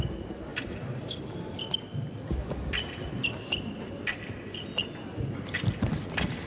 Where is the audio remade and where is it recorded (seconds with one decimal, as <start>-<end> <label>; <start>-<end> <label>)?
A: 0.0-0.5 recorded; 0.5-3.7 remade; 3.7-6.5 recorded